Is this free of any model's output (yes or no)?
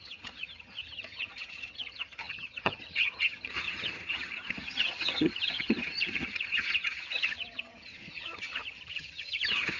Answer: no